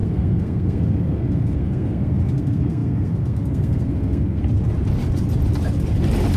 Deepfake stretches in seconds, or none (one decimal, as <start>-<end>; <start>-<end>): 0.0-4.4